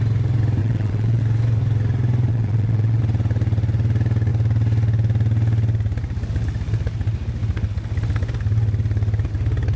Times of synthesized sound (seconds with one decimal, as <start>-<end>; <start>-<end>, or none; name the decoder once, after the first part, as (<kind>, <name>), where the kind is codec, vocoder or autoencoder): 0.6-1.2 (vocoder, Vocos); 2.3-3.0